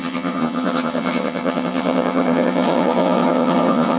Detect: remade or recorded remade